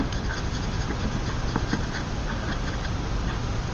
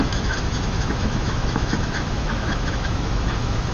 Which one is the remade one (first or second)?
second